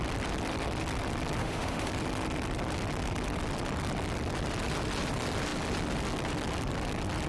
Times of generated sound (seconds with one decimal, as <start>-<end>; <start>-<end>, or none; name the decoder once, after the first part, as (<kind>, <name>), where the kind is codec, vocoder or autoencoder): 1.4-1.9 (autoencoder, DAC-VAE)